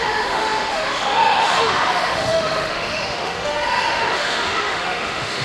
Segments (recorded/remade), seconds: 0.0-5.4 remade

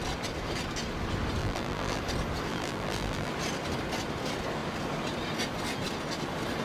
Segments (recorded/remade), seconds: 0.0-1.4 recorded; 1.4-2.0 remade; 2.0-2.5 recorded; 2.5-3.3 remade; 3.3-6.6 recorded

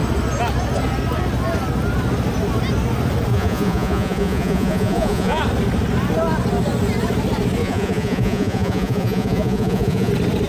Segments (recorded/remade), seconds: 0.0-3.3 recorded; 3.3-5.4 remade; 5.4-7.6 recorded; 7.6-10.1 remade; 10.1-10.5 recorded

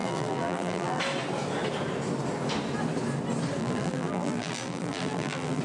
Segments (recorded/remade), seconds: 0.0-1.0 remade; 1.0-3.6 recorded; 3.6-5.6 remade